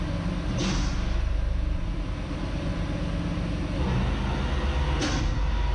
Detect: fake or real real